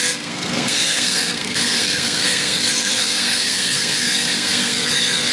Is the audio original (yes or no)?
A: no